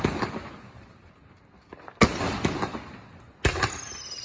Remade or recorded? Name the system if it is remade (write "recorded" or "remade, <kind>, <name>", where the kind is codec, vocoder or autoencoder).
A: recorded